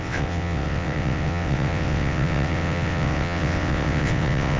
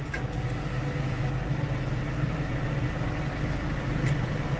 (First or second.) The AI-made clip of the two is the first